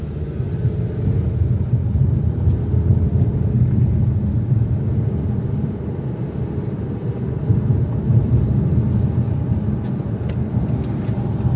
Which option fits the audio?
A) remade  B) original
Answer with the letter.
B